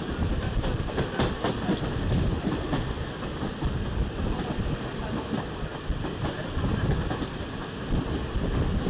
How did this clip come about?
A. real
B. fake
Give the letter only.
A